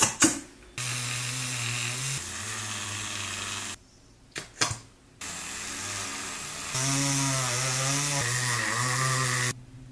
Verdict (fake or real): real